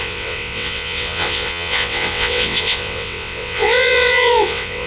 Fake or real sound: fake